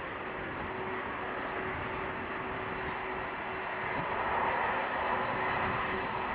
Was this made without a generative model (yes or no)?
yes